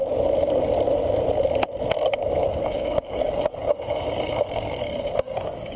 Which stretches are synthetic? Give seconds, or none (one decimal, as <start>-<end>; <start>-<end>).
2.4-5.8